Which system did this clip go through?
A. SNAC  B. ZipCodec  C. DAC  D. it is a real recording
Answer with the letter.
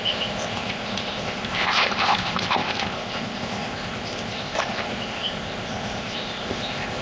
B